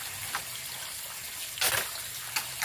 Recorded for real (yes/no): yes